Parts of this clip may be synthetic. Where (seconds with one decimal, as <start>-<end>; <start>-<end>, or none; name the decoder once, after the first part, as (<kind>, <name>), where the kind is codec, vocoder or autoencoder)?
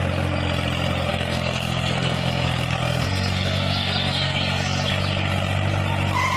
1.1-4.9 (codec, SNAC)